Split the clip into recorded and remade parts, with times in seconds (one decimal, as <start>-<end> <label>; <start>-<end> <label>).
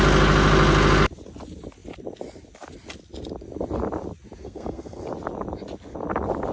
0.0-4.4 recorded; 4.4-5.0 remade; 5.0-6.5 recorded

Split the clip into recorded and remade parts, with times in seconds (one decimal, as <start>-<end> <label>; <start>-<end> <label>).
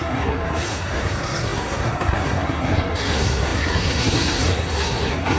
0.0-5.4 remade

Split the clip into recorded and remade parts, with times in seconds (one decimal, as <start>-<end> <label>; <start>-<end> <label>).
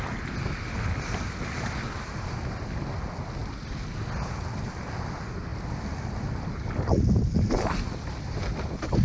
0.0-9.0 recorded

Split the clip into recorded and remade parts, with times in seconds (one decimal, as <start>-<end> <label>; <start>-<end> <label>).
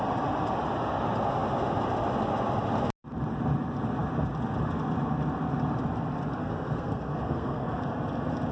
0.0-6.4 recorded; 6.4-7.8 remade; 7.8-8.5 recorded